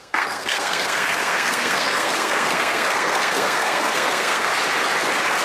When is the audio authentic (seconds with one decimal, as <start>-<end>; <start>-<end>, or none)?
4.5-5.4